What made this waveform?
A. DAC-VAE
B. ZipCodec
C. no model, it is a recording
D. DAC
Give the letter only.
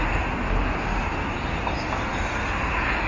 C